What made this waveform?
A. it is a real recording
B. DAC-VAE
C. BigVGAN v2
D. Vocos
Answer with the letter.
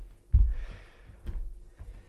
A